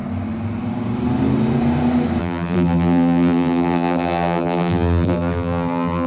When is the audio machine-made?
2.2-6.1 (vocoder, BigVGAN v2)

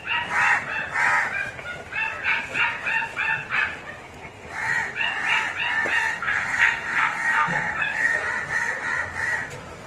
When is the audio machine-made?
6.1-8.2 (codec, SNAC)